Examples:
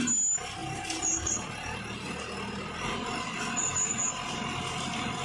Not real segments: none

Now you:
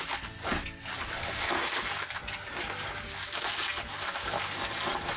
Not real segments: none

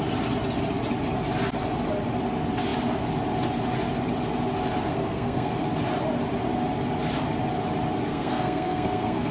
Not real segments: 4.9-5.5 (codec, SNAC); 8.1-9.3

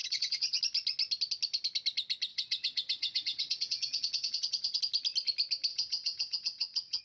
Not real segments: 0.0-0.6 (vocoder, WaveNeXt); 2.3-4.8; 5.7-7.0

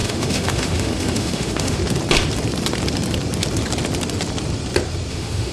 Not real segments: 0.0-1.8 (autoencoder, DAC-VAE); 5.1-5.5

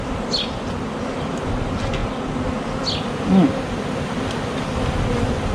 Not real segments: none

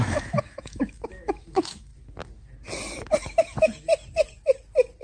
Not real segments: 0.0-1.9 (autoencoder, DAC-VAE)

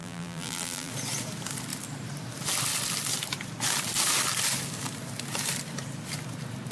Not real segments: 0.0-0.9 (vocoder, BigVGAN v2)